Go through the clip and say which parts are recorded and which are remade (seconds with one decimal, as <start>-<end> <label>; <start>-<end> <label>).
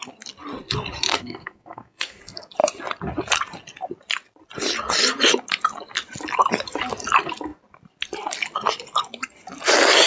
0.0-1.1 recorded; 1.1-2.2 remade; 2.2-10.1 recorded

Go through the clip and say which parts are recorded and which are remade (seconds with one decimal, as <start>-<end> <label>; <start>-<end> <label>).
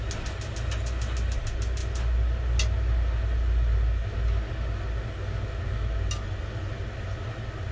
0.0-7.7 recorded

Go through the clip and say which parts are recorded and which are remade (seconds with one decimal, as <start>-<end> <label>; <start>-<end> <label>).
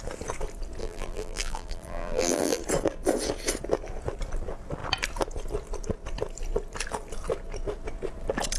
0.0-0.8 recorded; 0.8-2.6 remade; 2.6-8.6 recorded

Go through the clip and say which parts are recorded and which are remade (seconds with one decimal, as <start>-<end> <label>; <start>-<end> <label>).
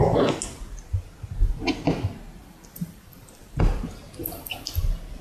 0.0-2.4 recorded; 2.4-3.4 remade; 3.4-4.2 recorded; 4.2-4.8 remade; 4.8-5.2 recorded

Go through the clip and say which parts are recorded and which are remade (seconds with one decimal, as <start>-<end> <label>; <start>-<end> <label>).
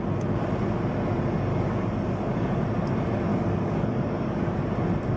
0.0-1.5 recorded; 1.5-2.6 remade; 2.6-3.3 recorded; 3.3-4.6 remade; 4.6-5.2 recorded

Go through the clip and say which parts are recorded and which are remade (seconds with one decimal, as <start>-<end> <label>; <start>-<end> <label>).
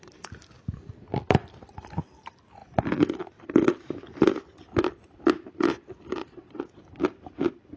0.0-6.2 recorded; 6.2-6.8 remade; 6.8-7.8 recorded